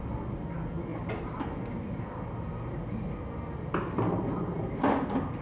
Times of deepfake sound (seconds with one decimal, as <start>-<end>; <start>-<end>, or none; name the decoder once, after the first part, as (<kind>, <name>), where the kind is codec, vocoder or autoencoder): none